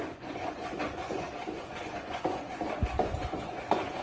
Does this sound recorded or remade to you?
remade